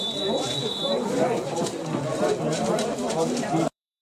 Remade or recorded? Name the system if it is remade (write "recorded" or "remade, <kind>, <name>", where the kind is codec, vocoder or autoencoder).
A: remade, vocoder, BigVGAN v2